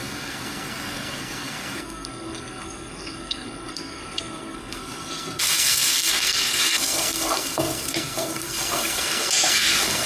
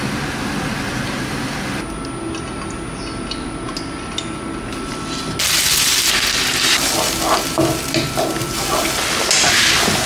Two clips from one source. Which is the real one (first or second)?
second